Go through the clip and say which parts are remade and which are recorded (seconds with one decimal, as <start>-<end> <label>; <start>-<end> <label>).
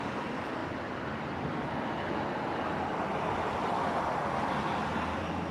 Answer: 0.0-0.6 recorded; 0.6-1.7 remade; 1.7-3.1 recorded; 3.1-4.3 remade; 4.3-5.5 recorded